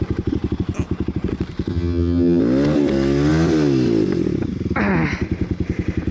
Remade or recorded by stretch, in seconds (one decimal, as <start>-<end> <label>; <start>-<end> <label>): 0.0-1.7 recorded; 1.7-2.4 remade; 2.4-6.1 recorded